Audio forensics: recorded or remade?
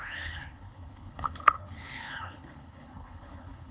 remade